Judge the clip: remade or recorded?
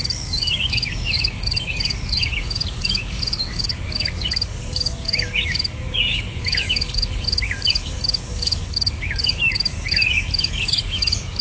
remade